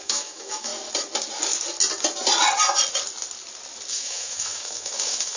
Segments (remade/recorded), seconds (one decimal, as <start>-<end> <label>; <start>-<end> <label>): 0.0-0.7 remade; 0.7-3.9 recorded; 3.9-5.4 remade